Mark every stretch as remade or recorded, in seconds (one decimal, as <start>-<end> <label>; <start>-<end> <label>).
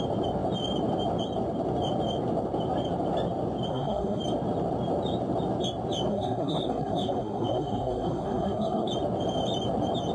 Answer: 0.0-3.7 recorded; 3.7-4.2 remade; 4.2-6.1 recorded; 6.1-8.9 remade; 8.9-10.1 recorded